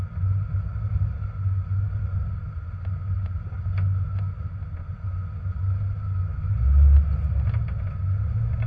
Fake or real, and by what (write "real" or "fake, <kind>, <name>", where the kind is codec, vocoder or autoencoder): real